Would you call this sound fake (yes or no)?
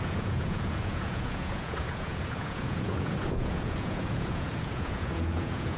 yes